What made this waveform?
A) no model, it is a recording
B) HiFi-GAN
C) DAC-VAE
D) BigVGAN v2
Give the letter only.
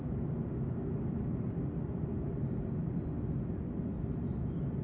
A